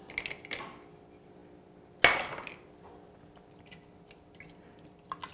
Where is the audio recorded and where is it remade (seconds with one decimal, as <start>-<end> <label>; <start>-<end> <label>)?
0.0-5.3 recorded